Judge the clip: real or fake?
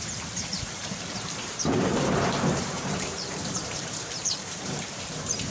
fake